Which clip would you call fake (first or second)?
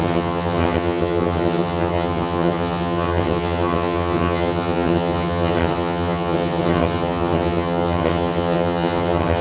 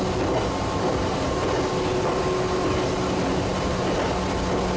first